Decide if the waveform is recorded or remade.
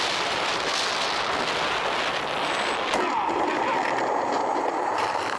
recorded